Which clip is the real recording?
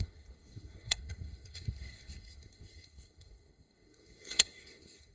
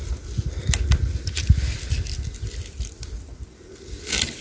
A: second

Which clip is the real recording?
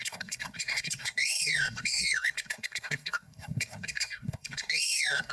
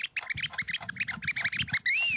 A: second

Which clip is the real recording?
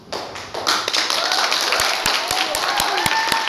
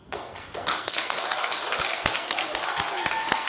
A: first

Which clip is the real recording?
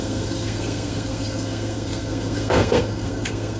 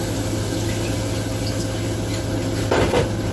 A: second